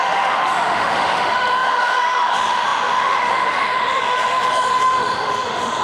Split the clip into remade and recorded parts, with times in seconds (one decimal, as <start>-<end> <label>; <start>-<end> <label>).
0.0-5.8 remade